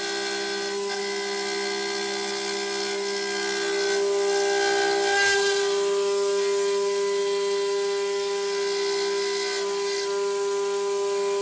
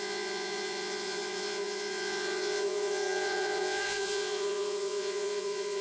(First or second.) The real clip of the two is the first